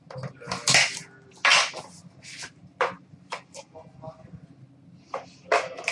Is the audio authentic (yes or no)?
yes